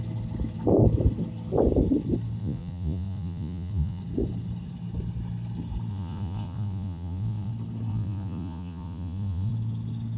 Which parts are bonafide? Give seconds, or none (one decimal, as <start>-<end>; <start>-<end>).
0.0-2.4; 4.0-5.9; 7.5-7.9; 9.5-10.2